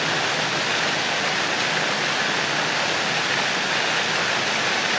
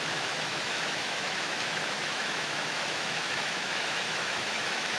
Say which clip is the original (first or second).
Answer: first